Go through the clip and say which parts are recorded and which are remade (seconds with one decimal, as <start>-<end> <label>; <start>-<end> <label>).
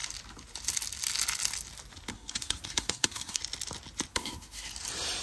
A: 0.0-2.1 recorded; 2.1-3.4 remade; 3.4-4.1 recorded; 4.1-4.7 remade; 4.7-5.2 recorded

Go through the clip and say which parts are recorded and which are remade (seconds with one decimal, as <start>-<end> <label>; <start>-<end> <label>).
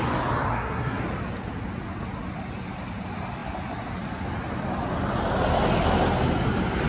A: 0.0-0.5 recorded; 0.5-1.0 remade; 1.0-6.9 recorded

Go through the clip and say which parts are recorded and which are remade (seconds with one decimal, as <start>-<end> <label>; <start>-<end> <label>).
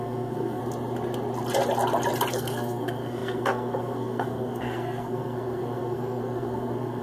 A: 0.0-0.6 remade; 0.6-2.3 recorded; 2.3-7.0 remade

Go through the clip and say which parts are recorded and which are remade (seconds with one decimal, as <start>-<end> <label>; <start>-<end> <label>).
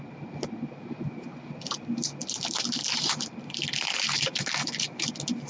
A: 0.0-5.5 recorded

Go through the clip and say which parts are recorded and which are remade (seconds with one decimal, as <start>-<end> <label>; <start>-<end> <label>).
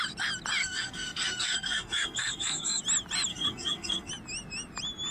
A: 0.0-0.6 recorded; 0.6-2.8 remade; 2.8-3.3 recorded; 3.3-4.1 remade; 4.1-5.1 recorded